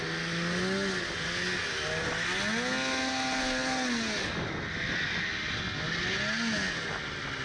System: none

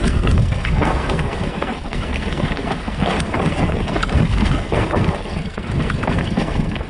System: codec, SNAC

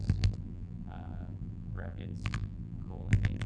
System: vocoder, BigVGAN v2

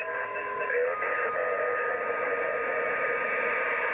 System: none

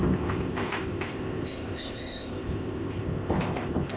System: codec, ZipCodec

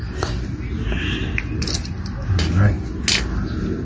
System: none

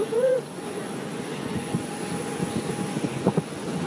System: vocoder, Vocos